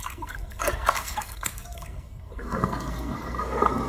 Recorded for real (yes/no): no